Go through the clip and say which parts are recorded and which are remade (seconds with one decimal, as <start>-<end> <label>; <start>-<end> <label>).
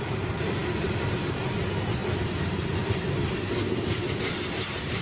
0.0-5.0 recorded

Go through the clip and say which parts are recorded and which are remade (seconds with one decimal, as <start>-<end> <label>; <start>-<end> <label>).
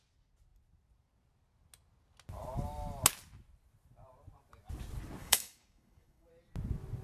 0.0-5.2 recorded; 5.2-6.3 remade; 6.3-7.0 recorded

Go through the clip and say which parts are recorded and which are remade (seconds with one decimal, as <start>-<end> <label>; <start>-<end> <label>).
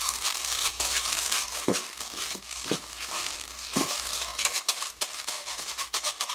0.0-6.3 remade